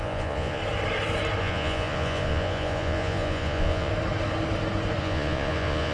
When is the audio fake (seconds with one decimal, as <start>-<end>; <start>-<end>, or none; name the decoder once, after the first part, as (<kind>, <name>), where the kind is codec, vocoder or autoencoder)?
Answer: 0.0-0.6 (vocoder, Vocos); 1.4-3.9; 5.0-5.9